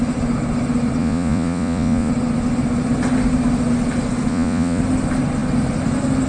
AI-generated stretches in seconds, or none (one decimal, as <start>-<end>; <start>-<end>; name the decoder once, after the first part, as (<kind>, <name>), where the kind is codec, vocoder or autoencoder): 1.0-2.1 (vocoder, Vocos); 4.3-4.8

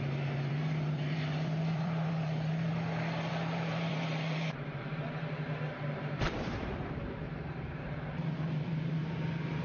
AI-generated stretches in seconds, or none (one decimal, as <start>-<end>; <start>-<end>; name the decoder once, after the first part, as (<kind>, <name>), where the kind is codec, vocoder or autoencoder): 0.0-2.7 (vocoder, BigVGAN v2); 3.3-9.6